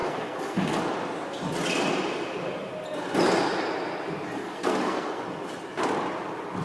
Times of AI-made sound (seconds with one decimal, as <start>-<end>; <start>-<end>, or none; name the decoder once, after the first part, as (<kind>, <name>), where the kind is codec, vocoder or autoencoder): 0.0-0.8 (codec, SNAC); 4.4-5.2